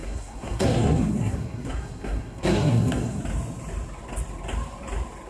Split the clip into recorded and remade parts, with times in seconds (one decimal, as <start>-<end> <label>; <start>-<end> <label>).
0.0-3.2 remade; 3.2-5.3 recorded